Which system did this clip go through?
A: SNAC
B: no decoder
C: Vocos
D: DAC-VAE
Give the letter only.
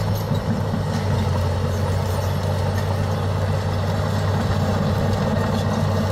B